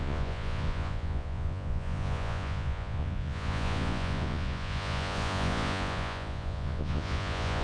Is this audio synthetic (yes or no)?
yes